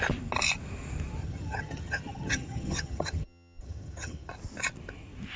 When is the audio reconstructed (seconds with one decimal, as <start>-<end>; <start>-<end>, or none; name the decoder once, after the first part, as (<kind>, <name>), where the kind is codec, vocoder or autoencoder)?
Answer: 1.2-4.3 (vocoder, HiFi-GAN)